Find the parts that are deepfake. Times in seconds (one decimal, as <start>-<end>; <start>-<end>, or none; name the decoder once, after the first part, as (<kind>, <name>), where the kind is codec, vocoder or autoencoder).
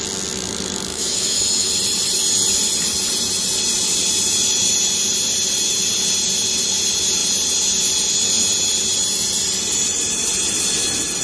0.9-1.7 (autoencoder, DAC-VAE)